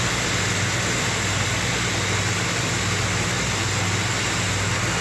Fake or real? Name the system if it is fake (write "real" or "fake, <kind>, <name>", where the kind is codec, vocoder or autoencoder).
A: real